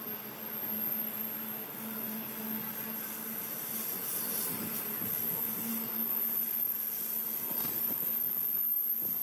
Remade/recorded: recorded